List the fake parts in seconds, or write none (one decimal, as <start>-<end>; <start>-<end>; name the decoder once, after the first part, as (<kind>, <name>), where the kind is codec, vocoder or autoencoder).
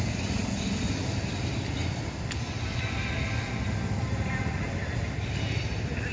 none